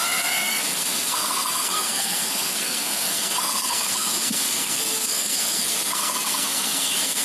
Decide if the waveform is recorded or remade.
remade